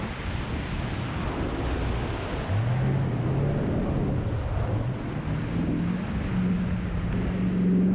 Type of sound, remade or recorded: recorded